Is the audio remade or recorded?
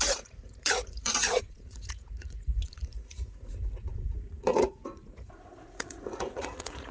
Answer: remade